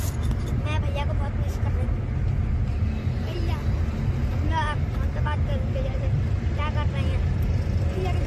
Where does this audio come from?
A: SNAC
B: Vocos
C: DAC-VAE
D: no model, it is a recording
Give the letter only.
D